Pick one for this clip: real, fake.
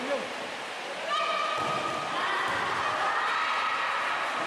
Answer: real